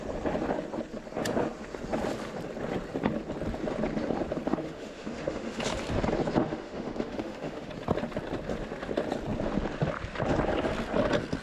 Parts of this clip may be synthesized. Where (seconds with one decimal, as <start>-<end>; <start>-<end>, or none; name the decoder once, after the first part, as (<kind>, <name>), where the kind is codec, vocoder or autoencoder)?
4.5-5.6 (autoencoder, DAC-VAE); 6.4-7.7